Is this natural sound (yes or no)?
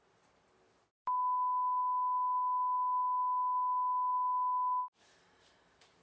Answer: yes